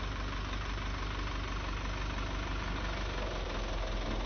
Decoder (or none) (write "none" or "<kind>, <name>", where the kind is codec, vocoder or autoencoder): none